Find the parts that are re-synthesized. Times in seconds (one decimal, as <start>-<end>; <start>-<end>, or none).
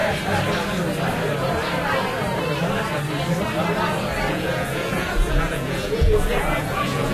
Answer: 4.3-7.1